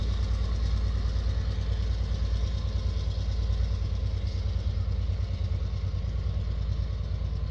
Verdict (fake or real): real